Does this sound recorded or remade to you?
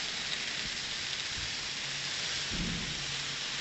recorded